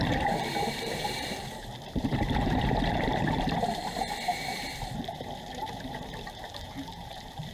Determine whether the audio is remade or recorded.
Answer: remade